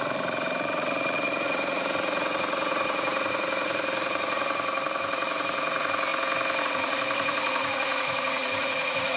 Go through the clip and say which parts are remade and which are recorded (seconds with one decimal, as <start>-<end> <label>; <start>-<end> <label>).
0.0-6.1 remade; 6.1-6.6 recorded; 6.6-9.2 remade